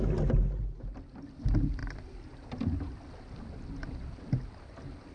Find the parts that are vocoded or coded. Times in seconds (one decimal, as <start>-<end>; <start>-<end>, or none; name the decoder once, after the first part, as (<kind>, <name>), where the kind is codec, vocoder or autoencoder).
none